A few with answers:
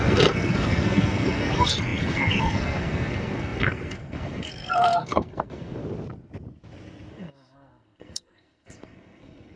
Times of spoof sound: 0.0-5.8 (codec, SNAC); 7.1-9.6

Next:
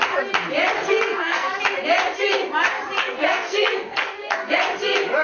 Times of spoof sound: 0.8-1.6 (codec, SNAC); 3.0-4.5